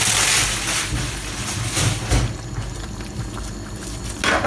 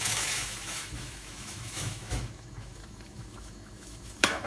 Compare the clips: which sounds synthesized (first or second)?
second